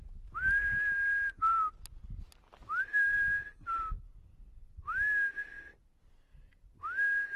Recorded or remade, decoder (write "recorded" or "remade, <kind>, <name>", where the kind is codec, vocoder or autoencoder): recorded